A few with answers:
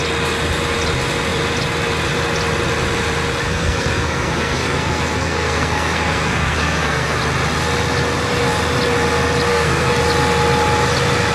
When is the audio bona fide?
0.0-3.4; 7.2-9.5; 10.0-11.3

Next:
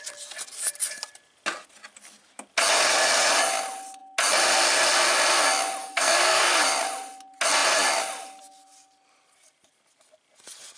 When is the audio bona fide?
0.0-5.8; 6.6-10.8

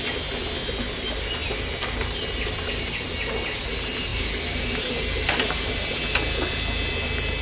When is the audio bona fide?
0.0-7.4

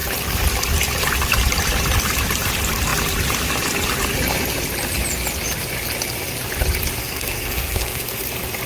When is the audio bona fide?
0.0-7.0; 8.2-8.7

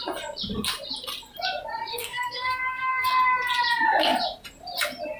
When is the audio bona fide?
0.0-1.9; 3.1-5.2

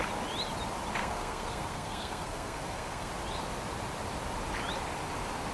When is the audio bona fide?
0.0-1.0; 3.1-5.5